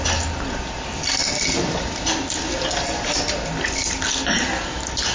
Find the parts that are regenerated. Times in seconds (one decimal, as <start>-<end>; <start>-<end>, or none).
none